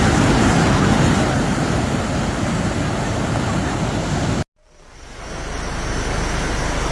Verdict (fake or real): real